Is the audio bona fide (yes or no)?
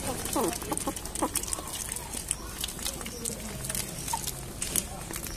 yes